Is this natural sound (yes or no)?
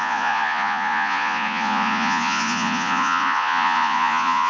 no